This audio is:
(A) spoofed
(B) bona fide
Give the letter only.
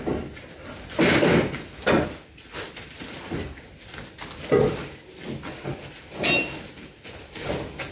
B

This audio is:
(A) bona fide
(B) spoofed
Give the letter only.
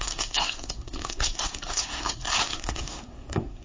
B